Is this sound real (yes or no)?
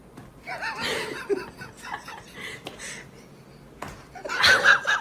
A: yes